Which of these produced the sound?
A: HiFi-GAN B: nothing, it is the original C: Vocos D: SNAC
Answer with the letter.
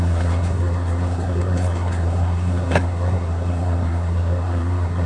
D